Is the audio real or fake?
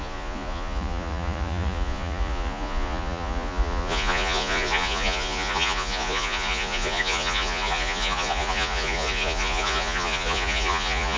fake